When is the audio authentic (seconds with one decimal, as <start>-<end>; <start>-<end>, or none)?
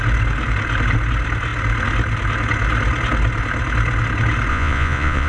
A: 0.0-4.5